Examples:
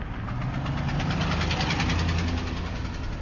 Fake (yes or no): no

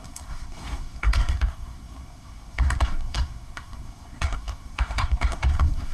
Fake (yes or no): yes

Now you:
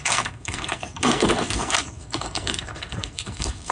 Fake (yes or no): yes